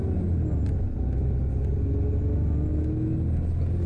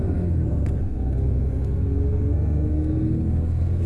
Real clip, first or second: first